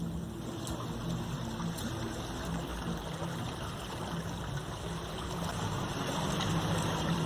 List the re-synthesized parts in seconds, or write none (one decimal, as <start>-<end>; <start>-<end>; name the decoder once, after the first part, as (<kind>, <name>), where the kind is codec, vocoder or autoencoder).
none